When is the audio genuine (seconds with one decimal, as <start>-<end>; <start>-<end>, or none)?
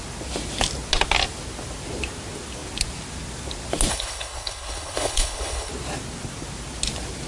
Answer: 0.0-3.9; 5.7-7.3